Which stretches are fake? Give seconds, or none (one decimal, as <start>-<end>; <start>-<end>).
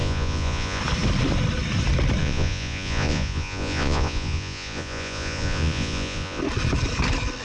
0.0-0.8; 2.2-6.4